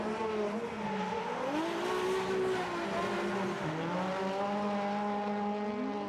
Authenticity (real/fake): real